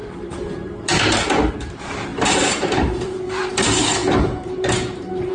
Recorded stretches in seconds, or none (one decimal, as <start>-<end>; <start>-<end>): none